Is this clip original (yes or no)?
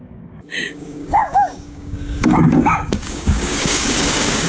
no